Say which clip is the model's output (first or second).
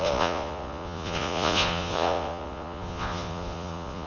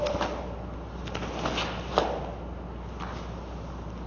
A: first